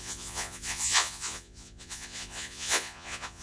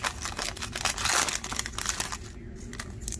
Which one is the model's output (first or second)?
first